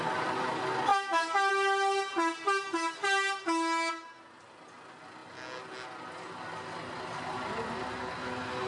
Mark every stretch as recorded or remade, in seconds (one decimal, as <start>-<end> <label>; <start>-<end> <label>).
0.0-0.9 recorded; 0.9-1.5 remade; 1.5-8.7 recorded